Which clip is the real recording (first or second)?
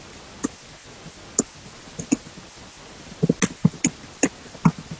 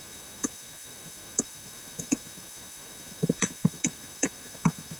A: first